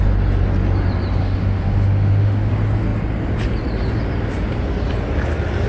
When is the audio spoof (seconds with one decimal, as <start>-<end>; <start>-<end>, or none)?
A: 1.2-2.5

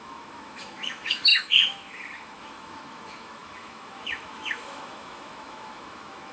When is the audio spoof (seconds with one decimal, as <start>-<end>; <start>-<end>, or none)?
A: 0.0-6.3

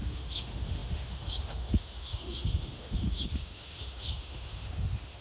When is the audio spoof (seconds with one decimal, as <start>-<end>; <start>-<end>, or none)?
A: 0.0-5.2

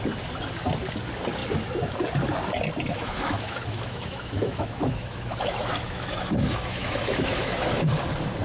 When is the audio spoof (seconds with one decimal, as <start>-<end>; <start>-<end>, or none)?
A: 2.9-7.9